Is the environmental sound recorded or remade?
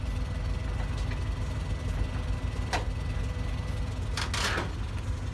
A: recorded